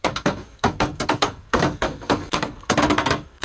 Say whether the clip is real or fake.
fake